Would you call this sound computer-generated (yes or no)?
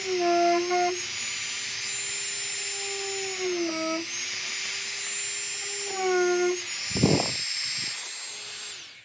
no